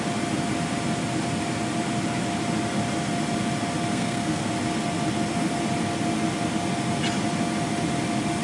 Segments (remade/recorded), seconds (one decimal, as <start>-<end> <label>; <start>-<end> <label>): 0.0-3.9 recorded; 3.9-4.5 remade; 4.5-8.4 recorded